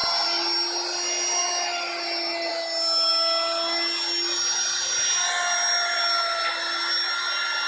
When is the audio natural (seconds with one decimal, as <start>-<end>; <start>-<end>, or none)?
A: 0.0-7.7